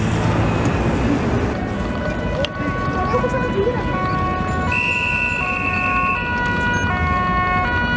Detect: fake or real real